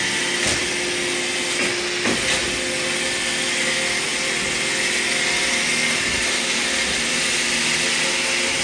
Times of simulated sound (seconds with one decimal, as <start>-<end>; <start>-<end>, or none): none